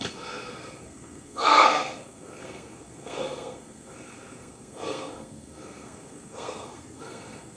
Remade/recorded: remade